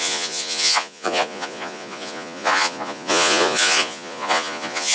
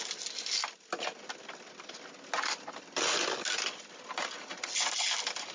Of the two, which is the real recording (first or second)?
second